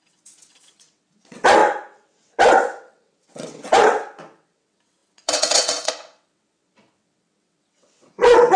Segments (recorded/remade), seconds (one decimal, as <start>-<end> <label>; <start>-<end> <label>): 0.0-8.6 remade

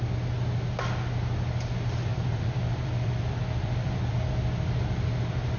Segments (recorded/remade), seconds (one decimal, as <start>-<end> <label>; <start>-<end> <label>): 0.0-2.1 recorded; 2.1-4.3 remade; 4.3-5.6 recorded

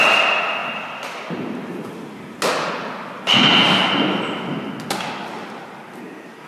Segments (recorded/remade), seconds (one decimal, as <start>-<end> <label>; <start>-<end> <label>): 0.0-6.5 recorded

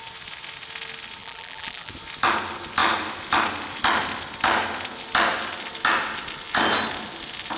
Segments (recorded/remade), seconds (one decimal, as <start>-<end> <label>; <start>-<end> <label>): 0.0-1.2 recorded; 1.2-1.9 remade; 1.9-7.6 recorded

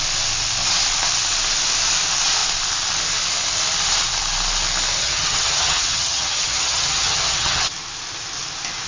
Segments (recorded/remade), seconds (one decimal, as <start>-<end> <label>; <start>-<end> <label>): 0.0-5.0 recorded; 5.0-7.7 remade; 7.7-8.9 recorded